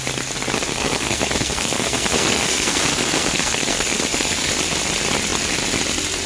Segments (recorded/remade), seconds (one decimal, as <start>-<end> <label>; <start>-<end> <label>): 0.0-0.7 recorded; 0.7-4.5 remade; 4.5-6.3 recorded